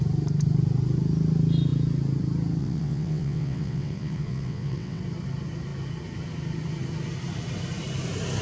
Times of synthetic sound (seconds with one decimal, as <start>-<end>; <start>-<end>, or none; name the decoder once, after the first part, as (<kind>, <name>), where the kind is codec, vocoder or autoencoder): 2.6-5.0 (vocoder, WaveNeXt)